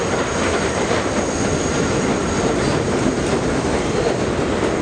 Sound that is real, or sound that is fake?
real